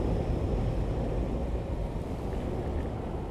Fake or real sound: real